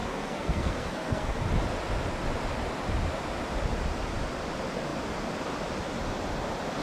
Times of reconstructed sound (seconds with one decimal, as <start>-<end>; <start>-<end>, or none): 0.0-1.5